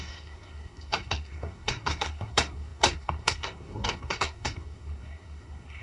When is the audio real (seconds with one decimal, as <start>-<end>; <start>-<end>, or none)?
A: none